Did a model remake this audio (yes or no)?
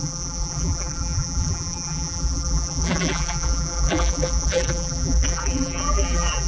yes